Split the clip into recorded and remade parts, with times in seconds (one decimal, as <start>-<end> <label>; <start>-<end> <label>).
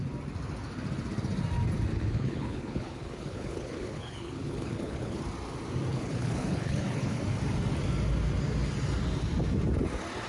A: 0.0-1.9 recorded; 1.9-5.2 remade; 5.2-5.9 recorded; 5.9-7.2 remade; 7.2-10.3 recorded